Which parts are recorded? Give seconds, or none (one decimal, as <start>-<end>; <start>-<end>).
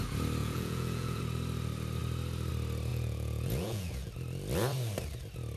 0.0-0.4; 1.2-2.9; 4.1-5.6